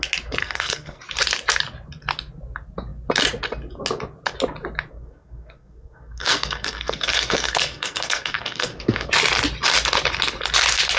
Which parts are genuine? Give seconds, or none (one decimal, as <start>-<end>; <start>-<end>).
0.0-0.4; 1.0-4.9; 9.1-11.0